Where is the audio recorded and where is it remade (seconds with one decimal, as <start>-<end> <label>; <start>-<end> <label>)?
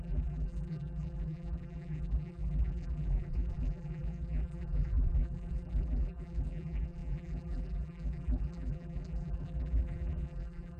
0.0-10.8 remade